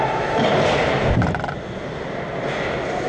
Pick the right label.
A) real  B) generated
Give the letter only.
A